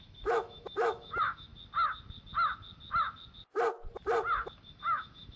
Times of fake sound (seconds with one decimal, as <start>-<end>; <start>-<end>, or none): 0.0-1.5; 4.7-5.4